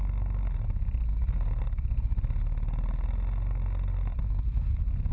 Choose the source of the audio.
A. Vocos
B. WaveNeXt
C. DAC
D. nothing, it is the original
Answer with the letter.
D